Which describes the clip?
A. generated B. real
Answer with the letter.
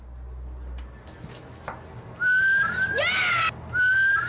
B